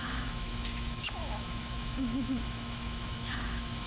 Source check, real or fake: fake